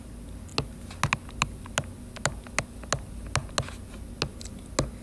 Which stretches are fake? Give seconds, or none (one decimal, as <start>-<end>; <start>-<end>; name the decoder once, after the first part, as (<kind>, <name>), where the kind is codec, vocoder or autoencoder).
none

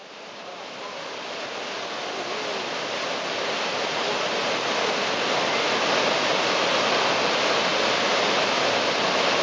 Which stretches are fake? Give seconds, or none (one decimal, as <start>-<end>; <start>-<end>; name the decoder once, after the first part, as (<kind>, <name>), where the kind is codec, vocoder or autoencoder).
none